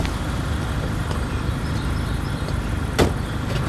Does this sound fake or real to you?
real